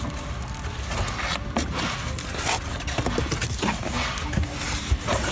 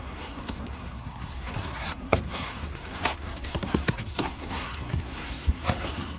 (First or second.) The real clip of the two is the first